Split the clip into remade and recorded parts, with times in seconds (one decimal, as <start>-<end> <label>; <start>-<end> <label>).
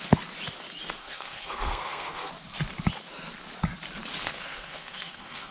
0.0-1.0 recorded; 1.0-2.3 remade; 2.3-4.2 recorded; 4.2-5.5 remade